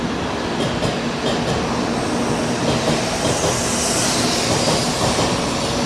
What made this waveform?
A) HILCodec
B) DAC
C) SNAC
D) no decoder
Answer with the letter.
D